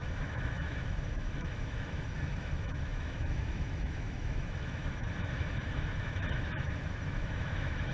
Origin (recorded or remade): remade